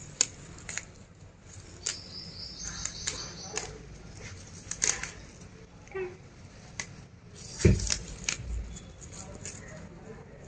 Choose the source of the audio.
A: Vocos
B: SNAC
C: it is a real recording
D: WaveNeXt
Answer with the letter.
C